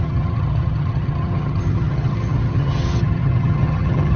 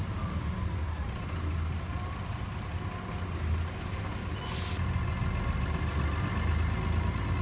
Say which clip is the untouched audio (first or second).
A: second